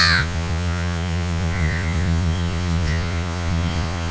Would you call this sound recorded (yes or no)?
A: no